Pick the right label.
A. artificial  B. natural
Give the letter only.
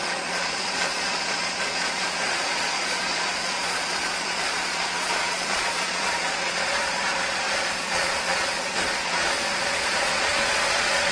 A